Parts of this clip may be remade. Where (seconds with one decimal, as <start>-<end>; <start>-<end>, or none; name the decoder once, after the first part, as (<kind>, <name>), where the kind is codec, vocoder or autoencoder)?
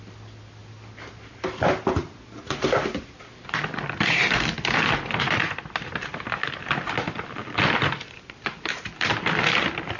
none